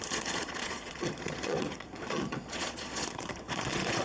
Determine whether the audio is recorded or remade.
remade